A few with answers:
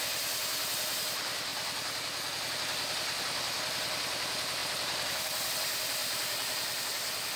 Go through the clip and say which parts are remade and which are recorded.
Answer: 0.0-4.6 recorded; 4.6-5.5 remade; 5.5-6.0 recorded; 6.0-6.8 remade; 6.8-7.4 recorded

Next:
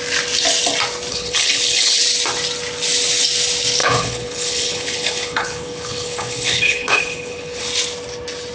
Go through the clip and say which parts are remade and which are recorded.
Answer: 0.0-1.1 recorded; 1.1-2.0 remade; 2.0-3.8 recorded; 3.8-7.6 remade; 7.6-8.5 recorded